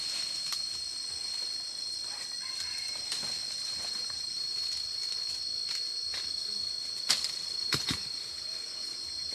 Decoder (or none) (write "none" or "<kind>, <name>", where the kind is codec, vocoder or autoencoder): none